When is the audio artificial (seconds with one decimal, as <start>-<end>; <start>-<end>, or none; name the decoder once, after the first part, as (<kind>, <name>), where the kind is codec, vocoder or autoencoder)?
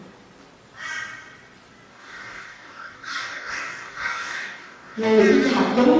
1.9-5.2 (codec, DAC)